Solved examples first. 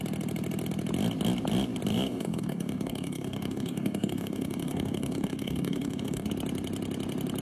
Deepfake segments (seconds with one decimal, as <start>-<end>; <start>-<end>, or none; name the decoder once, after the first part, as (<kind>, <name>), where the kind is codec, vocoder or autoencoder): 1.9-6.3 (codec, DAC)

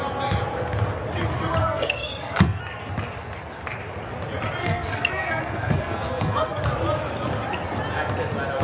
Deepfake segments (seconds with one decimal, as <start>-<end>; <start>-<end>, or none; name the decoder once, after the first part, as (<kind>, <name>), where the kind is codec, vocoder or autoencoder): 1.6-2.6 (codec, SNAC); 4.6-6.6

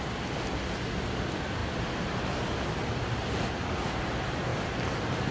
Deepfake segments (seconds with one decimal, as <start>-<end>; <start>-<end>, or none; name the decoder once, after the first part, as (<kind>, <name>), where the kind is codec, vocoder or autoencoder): none